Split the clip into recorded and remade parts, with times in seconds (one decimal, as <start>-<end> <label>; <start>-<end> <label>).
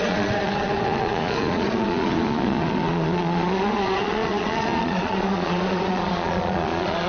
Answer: 0.0-7.1 remade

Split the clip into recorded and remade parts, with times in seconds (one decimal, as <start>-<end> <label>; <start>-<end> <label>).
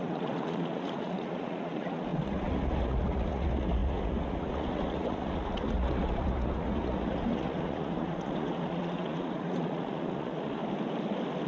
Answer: 0.0-10.6 remade; 10.6-11.5 recorded